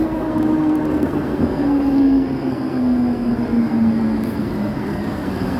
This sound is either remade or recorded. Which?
remade